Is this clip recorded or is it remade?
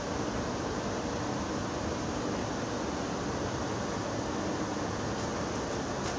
recorded